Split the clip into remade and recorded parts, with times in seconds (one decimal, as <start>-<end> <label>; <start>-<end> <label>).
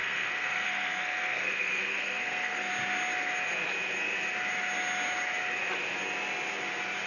0.0-2.7 remade; 2.7-7.1 recorded